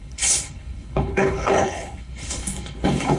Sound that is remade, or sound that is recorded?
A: remade